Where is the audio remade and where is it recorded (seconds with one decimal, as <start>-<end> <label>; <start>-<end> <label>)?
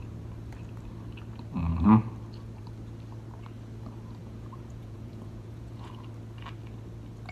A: 0.0-4.2 recorded; 4.2-5.9 remade; 5.9-7.3 recorded